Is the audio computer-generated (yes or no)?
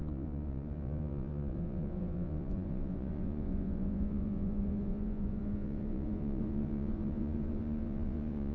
yes